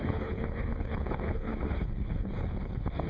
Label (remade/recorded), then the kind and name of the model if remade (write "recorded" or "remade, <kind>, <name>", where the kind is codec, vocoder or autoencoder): remade, codec, HILCodec